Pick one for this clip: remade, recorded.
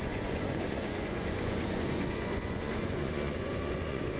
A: remade